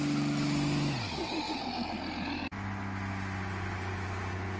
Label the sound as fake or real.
real